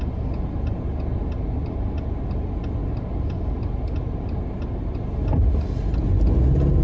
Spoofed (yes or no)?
no